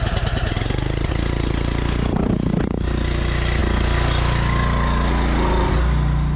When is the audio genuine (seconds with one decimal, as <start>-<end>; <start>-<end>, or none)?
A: 0.0-6.4